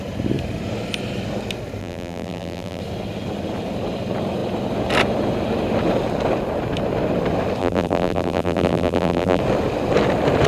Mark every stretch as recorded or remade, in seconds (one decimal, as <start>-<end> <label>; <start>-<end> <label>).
0.0-1.8 recorded; 1.8-2.8 remade; 2.8-7.6 recorded; 7.6-9.4 remade; 9.4-10.5 recorded